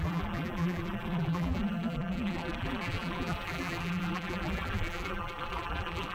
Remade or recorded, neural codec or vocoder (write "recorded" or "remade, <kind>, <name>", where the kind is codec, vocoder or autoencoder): remade, vocoder, BigVGAN v2